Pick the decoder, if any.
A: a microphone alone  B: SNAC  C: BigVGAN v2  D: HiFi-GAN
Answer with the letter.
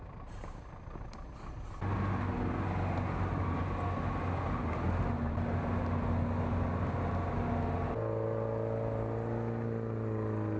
A